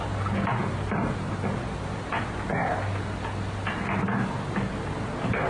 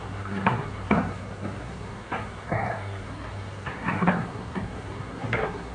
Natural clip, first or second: first